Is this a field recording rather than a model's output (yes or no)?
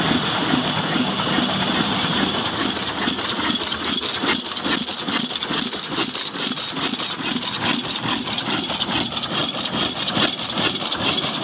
yes